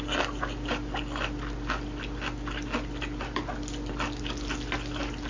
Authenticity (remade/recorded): recorded